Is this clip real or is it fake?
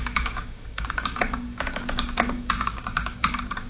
fake